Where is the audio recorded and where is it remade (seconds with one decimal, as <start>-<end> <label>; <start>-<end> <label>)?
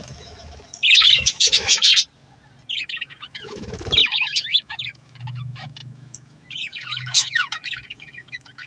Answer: 0.0-1.9 remade; 1.9-2.7 recorded; 2.7-8.7 remade